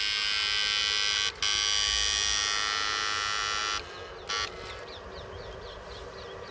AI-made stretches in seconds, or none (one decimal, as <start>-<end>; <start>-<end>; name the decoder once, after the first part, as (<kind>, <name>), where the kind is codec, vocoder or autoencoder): none